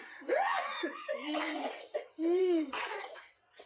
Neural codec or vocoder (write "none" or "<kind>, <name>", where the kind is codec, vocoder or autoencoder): vocoder, WaveNeXt